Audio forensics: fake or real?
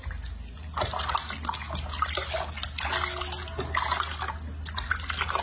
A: real